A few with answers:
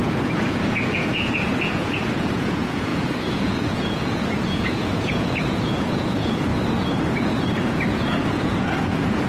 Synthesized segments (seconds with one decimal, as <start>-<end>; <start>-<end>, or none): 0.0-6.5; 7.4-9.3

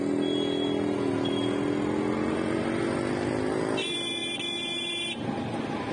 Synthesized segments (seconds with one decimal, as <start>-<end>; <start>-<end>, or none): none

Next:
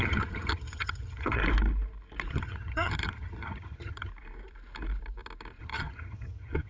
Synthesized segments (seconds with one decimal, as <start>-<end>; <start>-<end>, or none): 0.0-1.4; 2.3-4.1; 5.6-6.7

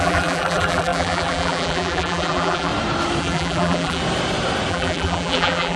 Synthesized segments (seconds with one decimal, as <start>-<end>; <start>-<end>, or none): 0.0-2.7; 3.2-4.0; 4.7-5.8

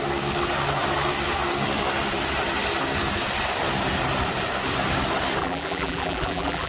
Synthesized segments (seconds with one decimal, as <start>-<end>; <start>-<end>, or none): 5.4-6.7

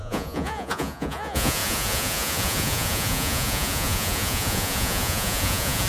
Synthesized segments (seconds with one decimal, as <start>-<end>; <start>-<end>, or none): 0.0-5.9

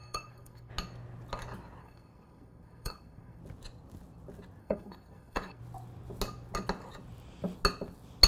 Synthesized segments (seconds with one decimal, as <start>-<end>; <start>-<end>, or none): 0.0-0.7; 1.8-3.4; 4.6-5.6

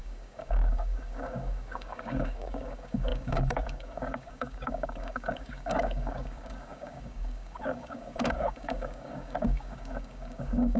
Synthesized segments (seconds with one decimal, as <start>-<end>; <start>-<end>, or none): 0.0-10.8